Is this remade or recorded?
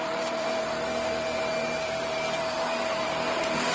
remade